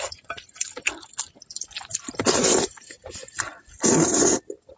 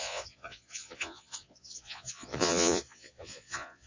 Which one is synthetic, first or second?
second